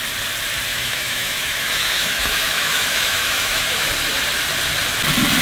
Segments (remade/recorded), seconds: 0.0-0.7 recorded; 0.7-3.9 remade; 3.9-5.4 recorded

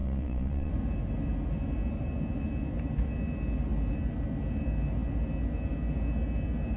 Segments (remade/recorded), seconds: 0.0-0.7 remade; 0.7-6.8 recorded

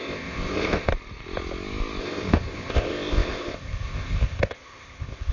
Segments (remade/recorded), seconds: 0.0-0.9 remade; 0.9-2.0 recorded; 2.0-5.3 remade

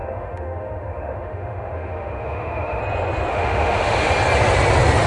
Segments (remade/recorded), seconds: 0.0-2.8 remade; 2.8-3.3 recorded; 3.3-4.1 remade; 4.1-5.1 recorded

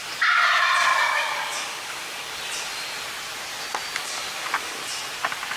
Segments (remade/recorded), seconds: 0.0-0.9 recorded; 0.9-2.4 remade; 2.4-4.0 recorded; 4.0-4.8 remade; 4.8-5.6 recorded

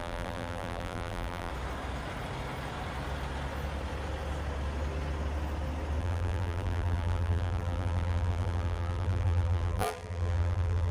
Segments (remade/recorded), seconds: 0.0-1.5 remade; 1.5-6.0 recorded; 6.0-10.9 remade

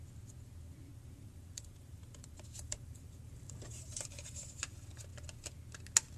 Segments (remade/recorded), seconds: 0.0-0.9 recorded; 0.9-4.6 remade; 4.6-6.2 recorded

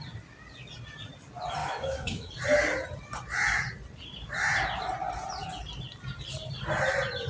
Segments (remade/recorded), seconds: 0.0-1.6 recorded; 1.6-2.3 remade; 2.3-7.3 recorded